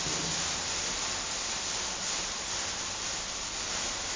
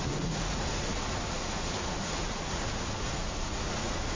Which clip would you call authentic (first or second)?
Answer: first